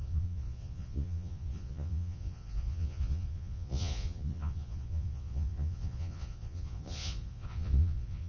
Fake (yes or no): yes